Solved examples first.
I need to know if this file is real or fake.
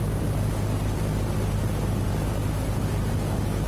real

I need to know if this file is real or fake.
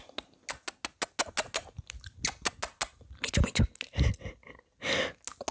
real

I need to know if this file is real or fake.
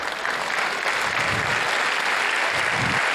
real